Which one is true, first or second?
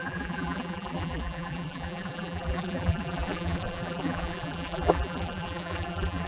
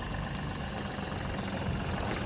second